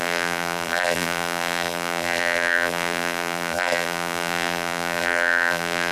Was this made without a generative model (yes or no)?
no